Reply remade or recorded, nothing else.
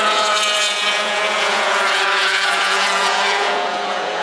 remade